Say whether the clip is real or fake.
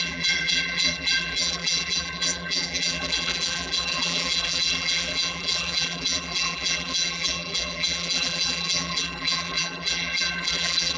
fake